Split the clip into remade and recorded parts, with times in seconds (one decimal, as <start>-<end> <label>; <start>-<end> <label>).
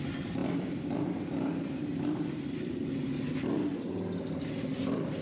0.0-0.4 recorded; 0.4-3.5 remade; 3.5-5.2 recorded